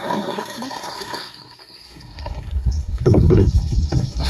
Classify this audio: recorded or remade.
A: remade